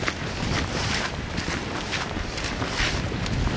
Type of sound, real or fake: real